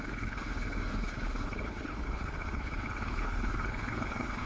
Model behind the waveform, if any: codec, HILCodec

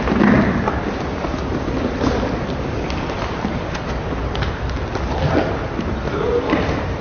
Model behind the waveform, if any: none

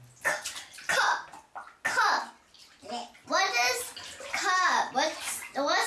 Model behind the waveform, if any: none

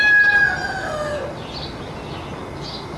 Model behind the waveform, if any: none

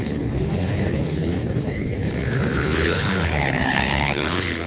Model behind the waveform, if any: codec, HILCodec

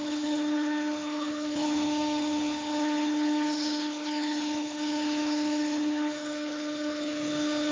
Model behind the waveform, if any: codec, HILCodec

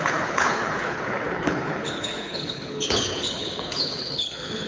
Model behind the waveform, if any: codec, HILCodec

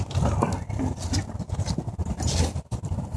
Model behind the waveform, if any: none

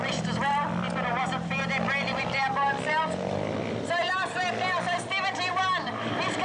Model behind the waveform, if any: none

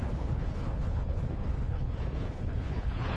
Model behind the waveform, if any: codec, HILCodec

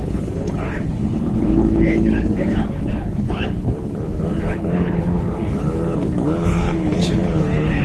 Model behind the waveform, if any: codec, HILCodec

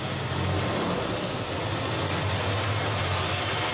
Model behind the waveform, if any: none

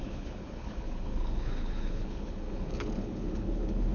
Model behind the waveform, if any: codec, HILCodec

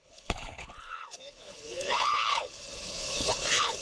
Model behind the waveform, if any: codec, HILCodec